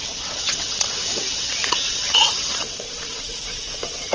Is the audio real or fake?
fake